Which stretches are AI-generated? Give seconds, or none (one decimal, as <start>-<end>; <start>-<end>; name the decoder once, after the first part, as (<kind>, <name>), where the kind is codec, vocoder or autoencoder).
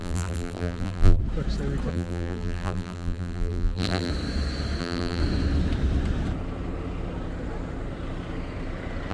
0.0-1.2 (vocoder, BigVGAN v2); 1.9-4.1; 4.8-5.2